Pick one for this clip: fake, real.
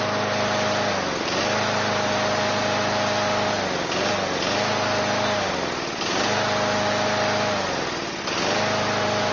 real